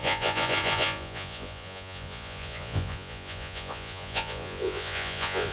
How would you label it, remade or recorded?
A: remade